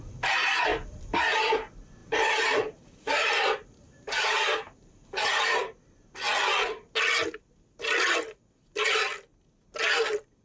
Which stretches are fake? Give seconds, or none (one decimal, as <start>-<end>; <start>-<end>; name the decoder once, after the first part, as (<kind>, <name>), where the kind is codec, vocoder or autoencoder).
0.7-1.2 (vocoder, BigVGAN v2); 2.0-5.4